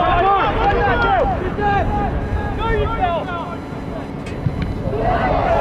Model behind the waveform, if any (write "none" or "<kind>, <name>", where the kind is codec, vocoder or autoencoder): none